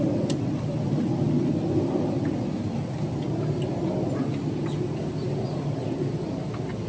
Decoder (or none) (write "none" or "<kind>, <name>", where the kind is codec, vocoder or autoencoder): none